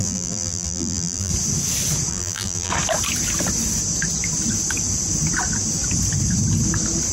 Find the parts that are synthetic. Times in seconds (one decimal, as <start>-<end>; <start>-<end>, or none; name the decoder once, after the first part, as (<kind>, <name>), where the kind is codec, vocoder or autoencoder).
0.0-1.3 (vocoder, BigVGAN v2); 2.1-2.7